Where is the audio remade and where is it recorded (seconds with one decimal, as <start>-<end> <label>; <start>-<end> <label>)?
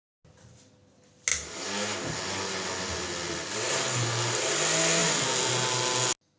0.0-6.4 recorded